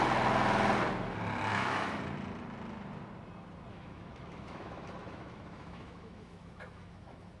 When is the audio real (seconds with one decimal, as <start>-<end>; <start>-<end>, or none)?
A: 0.0-1.5; 2.0-3.7